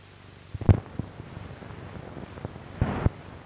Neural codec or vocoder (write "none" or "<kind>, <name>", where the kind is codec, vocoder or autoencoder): none